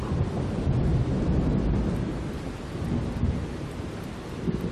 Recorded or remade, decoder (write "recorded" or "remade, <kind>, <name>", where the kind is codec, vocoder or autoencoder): recorded